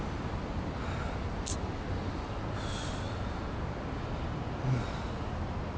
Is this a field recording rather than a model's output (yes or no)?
yes